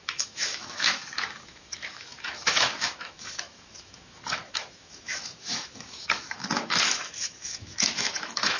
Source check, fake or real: fake